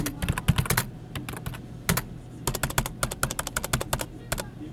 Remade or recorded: recorded